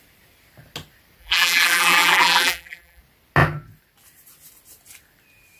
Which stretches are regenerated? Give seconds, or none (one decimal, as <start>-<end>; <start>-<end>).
1.2-3.0

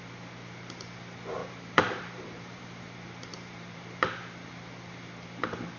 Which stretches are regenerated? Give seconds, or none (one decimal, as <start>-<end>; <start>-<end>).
1.4-2.6; 3.3-3.8

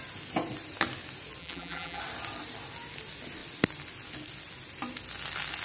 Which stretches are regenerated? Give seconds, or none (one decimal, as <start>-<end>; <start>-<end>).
1.4-2.0

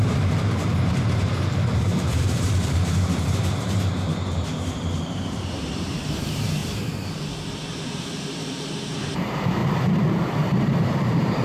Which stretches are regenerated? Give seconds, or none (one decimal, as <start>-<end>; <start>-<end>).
0.0-11.4